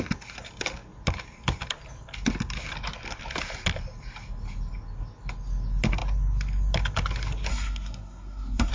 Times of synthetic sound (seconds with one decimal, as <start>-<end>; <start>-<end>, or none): 7.5-8.7